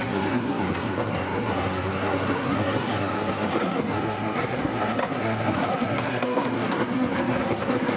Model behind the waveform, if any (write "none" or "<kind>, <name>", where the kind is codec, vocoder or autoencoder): codec, SNAC